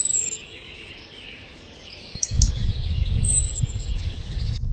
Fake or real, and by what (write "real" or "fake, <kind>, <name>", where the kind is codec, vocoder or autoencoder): fake, codec, DAC